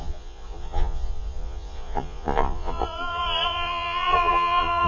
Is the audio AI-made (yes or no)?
yes